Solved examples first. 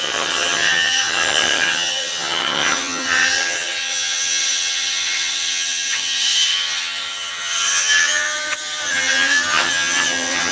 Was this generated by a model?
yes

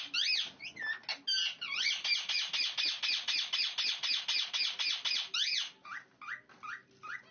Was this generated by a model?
no